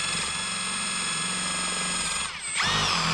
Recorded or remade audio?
recorded